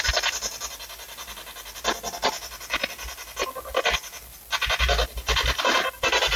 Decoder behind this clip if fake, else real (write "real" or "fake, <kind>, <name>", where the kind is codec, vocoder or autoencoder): real